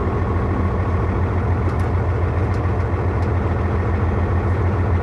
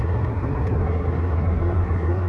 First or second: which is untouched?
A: first